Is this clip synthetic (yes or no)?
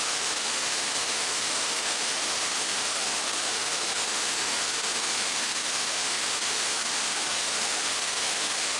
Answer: yes